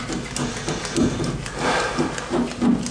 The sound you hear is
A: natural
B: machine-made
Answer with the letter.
A